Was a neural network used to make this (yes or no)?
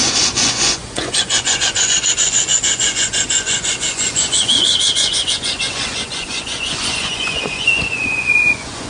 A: yes